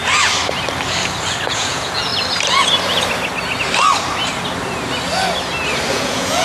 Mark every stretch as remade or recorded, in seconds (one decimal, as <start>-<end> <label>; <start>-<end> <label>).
0.0-1.5 recorded; 1.5-2.1 remade; 2.1-5.9 recorded; 5.9-6.4 remade